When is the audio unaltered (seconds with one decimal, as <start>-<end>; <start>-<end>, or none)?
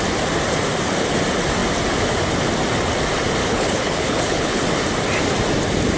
0.0-3.4; 4.6-6.0